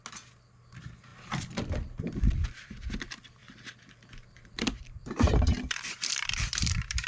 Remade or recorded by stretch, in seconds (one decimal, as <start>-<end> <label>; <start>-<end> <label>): 0.0-1.1 recorded; 1.1-3.0 remade; 3.0-3.4 recorded; 3.4-7.1 remade